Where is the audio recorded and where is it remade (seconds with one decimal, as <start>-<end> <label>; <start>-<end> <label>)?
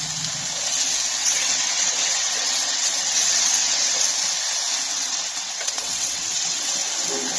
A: 0.0-1.2 recorded; 1.2-4.0 remade; 4.0-4.9 recorded; 4.9-6.7 remade; 6.7-7.4 recorded